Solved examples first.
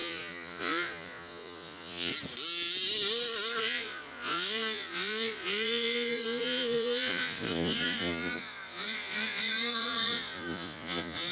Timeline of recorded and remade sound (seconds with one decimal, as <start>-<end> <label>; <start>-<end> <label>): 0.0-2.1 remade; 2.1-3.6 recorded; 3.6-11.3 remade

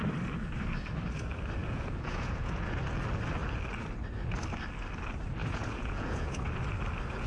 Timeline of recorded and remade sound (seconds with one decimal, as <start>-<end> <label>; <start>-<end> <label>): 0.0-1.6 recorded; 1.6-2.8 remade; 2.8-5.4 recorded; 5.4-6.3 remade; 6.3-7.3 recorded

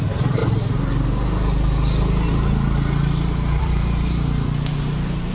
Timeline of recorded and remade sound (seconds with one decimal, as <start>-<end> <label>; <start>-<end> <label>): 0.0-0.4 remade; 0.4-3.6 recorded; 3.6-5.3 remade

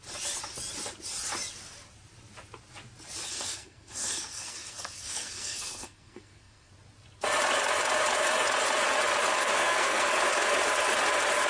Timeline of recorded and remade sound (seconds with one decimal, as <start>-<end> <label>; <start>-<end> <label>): 0.0-3.3 recorded; 3.3-6.7 remade; 6.7-9.4 recorded; 9.4-10.1 remade; 10.1-11.5 recorded